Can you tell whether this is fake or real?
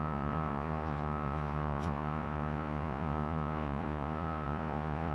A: fake